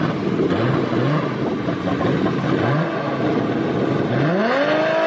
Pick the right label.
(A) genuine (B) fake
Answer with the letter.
A